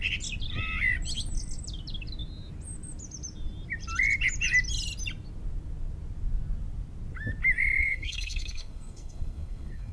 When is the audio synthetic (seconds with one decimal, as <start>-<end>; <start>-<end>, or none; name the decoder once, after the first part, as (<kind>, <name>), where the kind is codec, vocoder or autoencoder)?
7.8-9.9 (codec, SNAC)